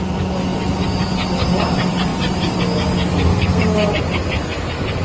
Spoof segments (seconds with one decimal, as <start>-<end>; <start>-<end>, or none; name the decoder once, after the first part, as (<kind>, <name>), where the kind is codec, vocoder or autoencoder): 3.3-3.9 (codec, SNAC)